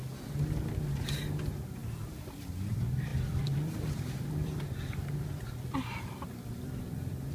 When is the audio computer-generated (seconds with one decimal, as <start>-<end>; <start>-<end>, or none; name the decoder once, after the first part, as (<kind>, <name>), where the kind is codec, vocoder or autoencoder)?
1.2-7.3 (vocoder, BigVGAN v2)